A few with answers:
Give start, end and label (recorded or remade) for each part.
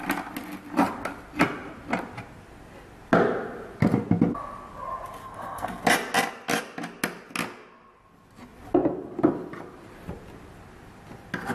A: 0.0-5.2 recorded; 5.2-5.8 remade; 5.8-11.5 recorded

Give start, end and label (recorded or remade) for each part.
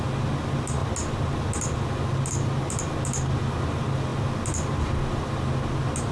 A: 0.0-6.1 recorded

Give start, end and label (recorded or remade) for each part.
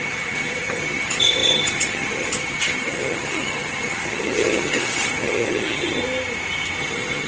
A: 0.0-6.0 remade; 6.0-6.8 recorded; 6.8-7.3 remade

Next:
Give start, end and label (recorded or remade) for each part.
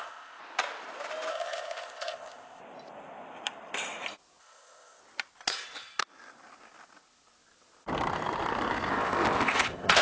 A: 0.0-0.4 remade; 0.4-1.3 recorded; 1.3-2.6 remade; 2.6-4.4 recorded; 4.4-5.0 remade; 5.0-8.9 recorded; 8.9-10.0 remade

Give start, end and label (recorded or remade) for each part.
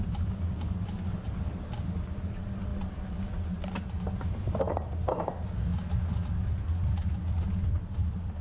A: 0.0-8.4 recorded